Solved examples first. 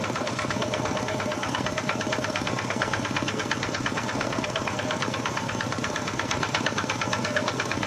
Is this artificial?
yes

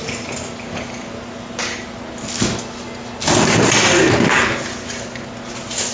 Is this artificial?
no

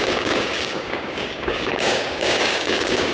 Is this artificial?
yes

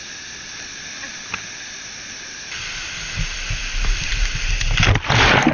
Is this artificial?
no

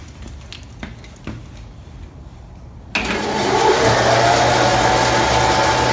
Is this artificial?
no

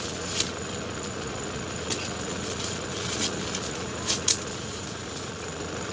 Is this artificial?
yes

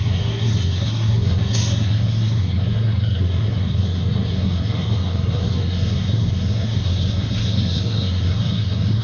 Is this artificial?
yes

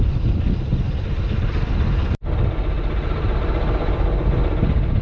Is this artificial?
no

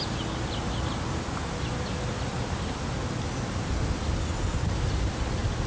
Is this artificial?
no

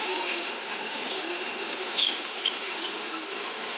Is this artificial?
yes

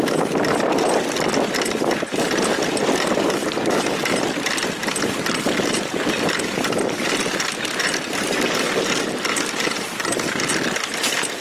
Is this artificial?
no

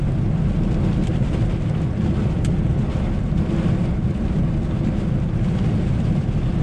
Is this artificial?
no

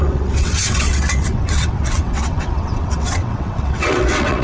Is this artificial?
yes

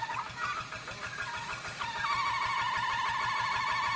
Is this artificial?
no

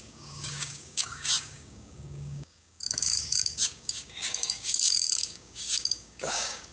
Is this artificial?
yes